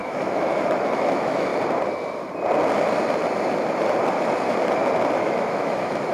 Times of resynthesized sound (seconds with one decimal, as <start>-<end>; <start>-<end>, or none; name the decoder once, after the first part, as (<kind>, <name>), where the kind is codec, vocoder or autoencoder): 0.0-1.5 (autoencoder, DAC-VAE); 5.2-6.1